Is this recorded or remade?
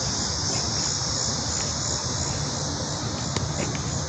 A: recorded